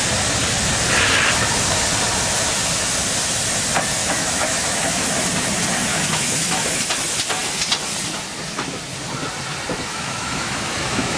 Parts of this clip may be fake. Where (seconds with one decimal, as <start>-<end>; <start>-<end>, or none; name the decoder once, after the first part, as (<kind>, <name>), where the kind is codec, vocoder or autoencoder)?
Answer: 4.0-5.2 (autoencoder, DAC-VAE); 5.9-6.8; 9.9-11.2